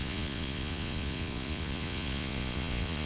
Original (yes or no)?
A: no